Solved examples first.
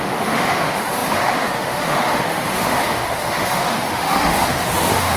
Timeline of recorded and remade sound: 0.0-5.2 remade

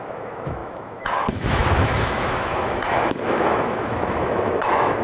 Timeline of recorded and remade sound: 0.0-5.0 remade